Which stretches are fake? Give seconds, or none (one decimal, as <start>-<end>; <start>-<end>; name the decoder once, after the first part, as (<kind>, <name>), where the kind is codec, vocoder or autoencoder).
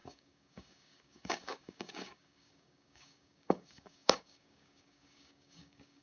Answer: 0.0-6.0 (codec, DAC)